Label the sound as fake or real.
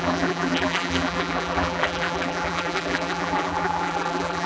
fake